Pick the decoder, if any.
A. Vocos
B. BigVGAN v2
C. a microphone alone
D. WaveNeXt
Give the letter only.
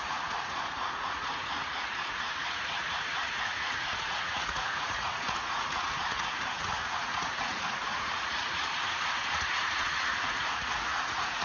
A